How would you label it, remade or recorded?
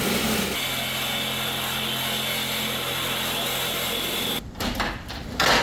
recorded